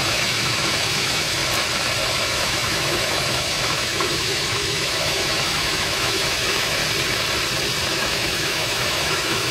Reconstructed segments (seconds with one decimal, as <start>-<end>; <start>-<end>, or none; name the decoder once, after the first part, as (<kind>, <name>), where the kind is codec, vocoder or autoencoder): 0.0-1.4 (autoencoder, DAC-VAE); 2.2-6.8; 7.9-9.5